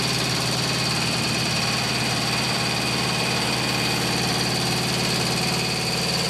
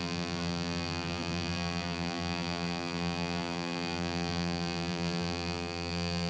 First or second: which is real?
first